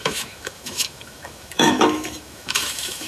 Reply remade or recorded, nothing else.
remade